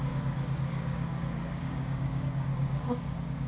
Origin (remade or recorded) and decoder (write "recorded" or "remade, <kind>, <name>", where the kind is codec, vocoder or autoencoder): remade, codec, DAC